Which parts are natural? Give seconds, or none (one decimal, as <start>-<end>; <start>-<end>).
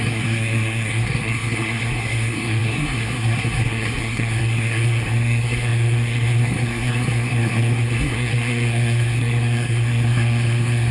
none